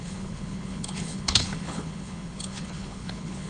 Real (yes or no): no